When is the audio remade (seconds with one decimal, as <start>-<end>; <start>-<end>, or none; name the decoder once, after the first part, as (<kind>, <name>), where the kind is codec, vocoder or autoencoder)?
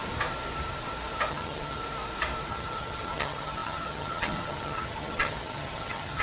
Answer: 1.3-1.8 (vocoder, HiFi-GAN); 2.5-6.2